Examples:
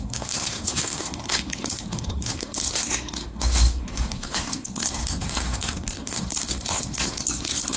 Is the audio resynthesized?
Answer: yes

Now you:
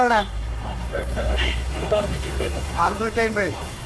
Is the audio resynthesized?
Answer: yes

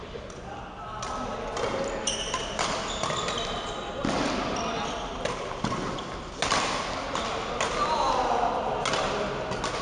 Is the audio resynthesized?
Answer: no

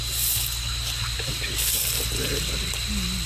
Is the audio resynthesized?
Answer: no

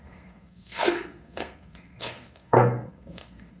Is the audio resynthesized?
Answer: yes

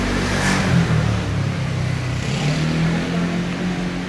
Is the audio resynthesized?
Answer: no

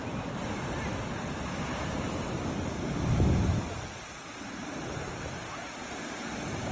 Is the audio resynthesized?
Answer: no